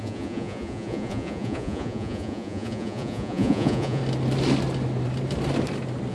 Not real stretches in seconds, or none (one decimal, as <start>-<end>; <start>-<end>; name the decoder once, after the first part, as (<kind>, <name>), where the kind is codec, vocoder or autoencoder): 0.0-4.0 (vocoder, Vocos)